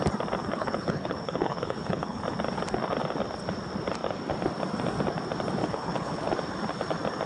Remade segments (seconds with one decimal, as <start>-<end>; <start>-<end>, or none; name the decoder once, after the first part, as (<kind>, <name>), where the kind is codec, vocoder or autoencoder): 0.4-2.2 (codec, HILCodec); 5.6-6.3